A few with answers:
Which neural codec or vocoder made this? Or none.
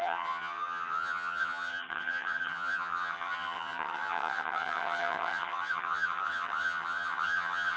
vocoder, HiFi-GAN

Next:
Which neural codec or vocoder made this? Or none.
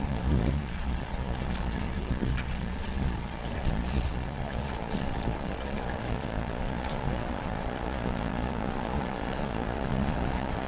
vocoder, Vocos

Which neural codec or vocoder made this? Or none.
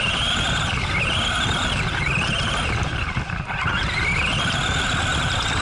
none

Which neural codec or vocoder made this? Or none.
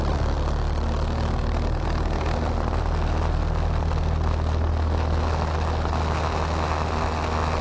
none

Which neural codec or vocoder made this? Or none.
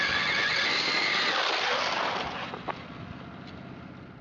none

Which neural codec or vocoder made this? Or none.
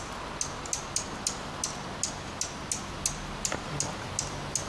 none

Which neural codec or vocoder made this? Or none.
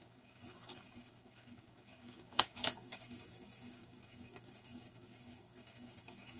codec, DAC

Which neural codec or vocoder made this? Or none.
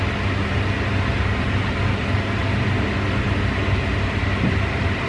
none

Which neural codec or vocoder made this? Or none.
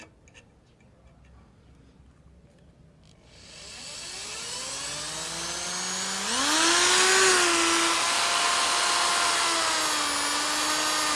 none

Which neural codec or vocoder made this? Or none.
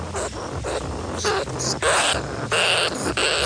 none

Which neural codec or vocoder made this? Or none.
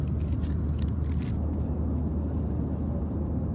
none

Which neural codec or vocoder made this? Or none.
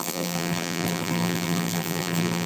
vocoder, BigVGAN v2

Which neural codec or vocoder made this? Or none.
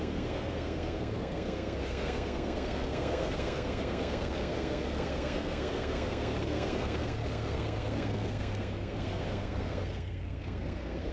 codec, SNAC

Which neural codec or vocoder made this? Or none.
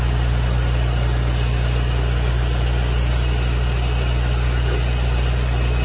none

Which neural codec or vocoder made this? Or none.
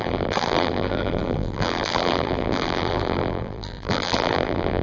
vocoder, BigVGAN v2